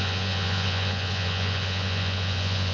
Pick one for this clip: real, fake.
fake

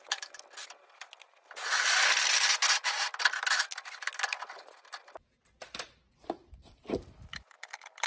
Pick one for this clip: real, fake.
real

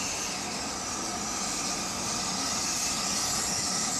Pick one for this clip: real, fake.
real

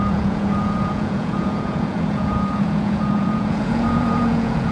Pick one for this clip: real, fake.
fake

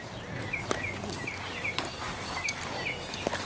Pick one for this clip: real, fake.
real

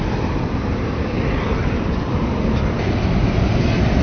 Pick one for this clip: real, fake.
real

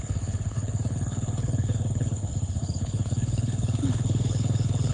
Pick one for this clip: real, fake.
fake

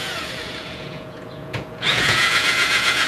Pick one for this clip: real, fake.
fake